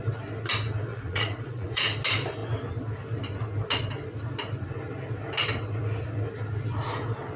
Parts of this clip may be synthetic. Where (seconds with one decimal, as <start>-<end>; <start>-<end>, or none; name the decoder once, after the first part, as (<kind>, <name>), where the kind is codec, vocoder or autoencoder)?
0.9-1.8 (vocoder, Vocos)